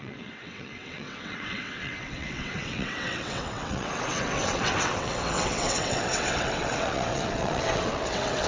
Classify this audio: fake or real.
fake